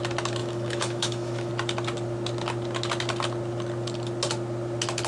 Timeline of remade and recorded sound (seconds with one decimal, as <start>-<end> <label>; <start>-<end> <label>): 0.0-0.4 recorded; 0.4-1.5 remade; 1.5-5.1 recorded